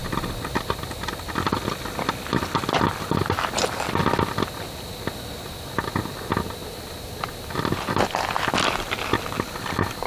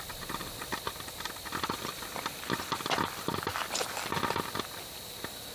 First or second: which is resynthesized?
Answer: second